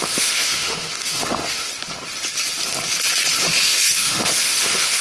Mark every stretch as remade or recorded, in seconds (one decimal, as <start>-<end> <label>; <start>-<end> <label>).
0.0-1.7 remade; 1.7-3.4 recorded; 3.4-5.0 remade